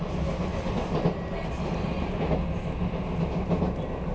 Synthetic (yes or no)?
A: no